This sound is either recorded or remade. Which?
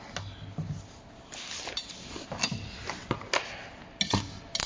recorded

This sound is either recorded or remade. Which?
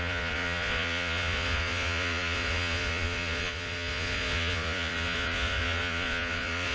remade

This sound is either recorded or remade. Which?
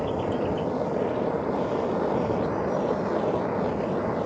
recorded